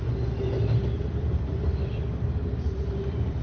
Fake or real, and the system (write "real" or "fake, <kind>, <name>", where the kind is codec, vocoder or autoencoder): real